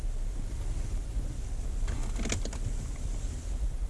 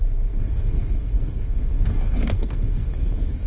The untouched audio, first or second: first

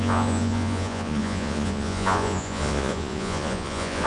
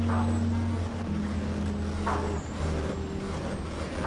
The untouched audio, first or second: second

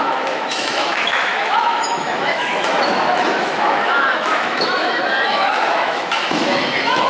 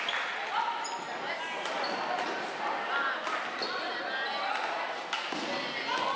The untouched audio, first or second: second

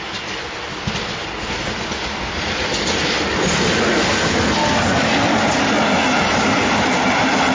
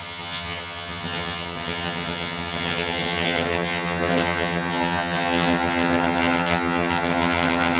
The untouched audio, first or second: first